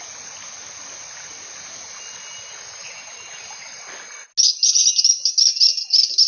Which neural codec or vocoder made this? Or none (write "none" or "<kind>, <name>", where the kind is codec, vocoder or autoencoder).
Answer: none